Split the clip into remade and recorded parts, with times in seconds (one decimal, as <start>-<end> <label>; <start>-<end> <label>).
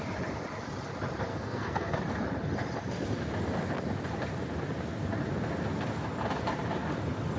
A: 0.0-1.3 recorded; 1.3-2.0 remade; 2.0-7.4 recorded